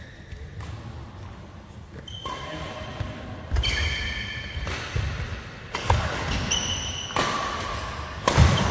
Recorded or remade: recorded